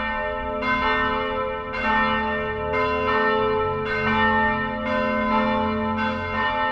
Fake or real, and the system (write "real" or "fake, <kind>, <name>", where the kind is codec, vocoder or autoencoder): real